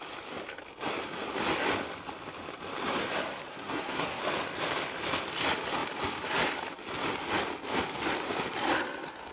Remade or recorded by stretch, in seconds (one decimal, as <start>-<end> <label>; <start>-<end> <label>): 0.0-3.5 recorded; 3.5-4.2 remade; 4.2-9.3 recorded